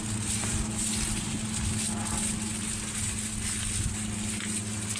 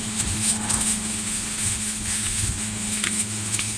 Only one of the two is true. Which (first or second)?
first